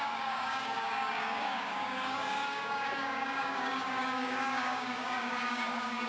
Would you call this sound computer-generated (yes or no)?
yes